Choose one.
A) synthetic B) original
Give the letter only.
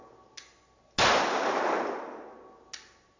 B